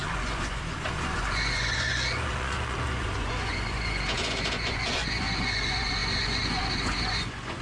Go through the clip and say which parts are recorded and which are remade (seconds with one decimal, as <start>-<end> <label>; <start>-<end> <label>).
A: 0.0-7.6 remade